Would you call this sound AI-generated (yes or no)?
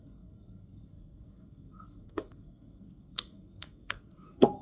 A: yes